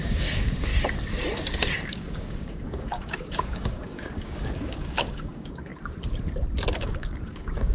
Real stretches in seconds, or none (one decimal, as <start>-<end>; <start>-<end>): 0.7-1.9; 5.7-6.8